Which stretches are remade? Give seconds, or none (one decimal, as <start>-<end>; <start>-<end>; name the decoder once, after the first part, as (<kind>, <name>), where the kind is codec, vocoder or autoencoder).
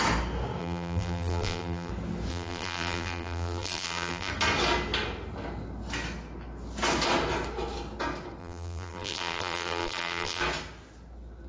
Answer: 0.6-1.9 (vocoder, BigVGAN v2); 2.3-4.3; 8.4-10.4